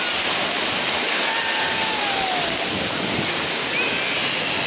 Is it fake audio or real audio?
real